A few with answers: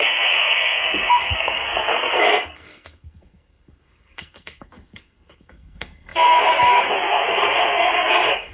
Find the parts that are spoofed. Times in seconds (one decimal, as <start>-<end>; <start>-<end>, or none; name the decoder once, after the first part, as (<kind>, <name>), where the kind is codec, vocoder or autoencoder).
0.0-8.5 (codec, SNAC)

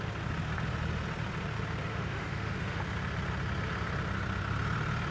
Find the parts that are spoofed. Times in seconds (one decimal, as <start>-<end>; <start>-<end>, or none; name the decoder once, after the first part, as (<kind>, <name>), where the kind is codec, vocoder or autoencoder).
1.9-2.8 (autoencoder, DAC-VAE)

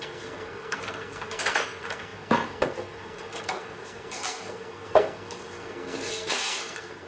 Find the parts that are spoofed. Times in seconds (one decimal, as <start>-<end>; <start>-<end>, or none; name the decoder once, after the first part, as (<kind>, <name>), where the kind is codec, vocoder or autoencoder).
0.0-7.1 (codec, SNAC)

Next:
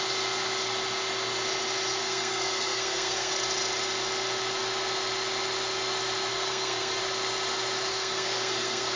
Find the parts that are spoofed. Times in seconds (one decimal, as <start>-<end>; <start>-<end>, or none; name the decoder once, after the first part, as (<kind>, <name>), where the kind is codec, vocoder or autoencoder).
2.0-3.3 (codec, SNAC); 6.3-7.0; 7.9-9.0

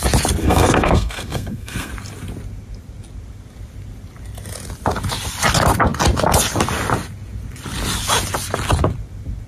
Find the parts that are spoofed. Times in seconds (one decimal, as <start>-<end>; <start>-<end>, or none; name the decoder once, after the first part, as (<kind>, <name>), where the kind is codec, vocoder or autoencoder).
0.4-1.9 (codec, SNAC)